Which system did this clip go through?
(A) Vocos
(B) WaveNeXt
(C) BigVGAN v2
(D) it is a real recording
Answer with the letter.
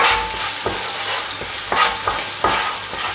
D